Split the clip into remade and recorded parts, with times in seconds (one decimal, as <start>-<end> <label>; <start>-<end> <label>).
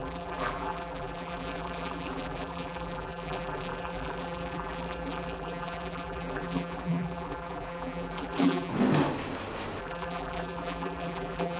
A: 0.0-8.7 remade; 8.7-9.8 recorded; 9.8-11.6 remade